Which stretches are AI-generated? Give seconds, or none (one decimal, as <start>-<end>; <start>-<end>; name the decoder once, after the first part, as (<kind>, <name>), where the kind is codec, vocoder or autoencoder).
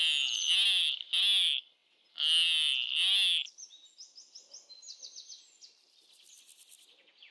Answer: none